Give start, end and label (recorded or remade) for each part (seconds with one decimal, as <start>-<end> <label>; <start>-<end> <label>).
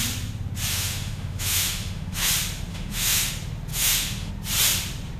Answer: 0.0-0.7 recorded; 0.7-2.3 remade; 2.3-2.7 recorded; 2.7-3.3 remade; 3.3-3.7 recorded; 3.7-4.3 remade; 4.3-5.2 recorded